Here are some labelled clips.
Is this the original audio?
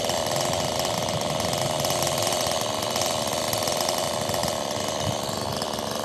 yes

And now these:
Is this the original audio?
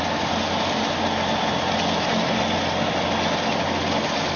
yes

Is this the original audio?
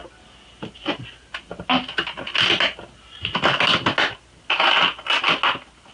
yes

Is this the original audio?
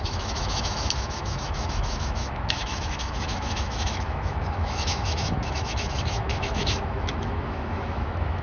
no